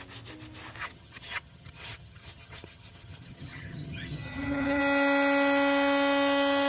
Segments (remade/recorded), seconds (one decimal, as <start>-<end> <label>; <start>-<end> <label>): 0.0-0.8 recorded; 0.8-4.8 remade; 4.8-6.7 recorded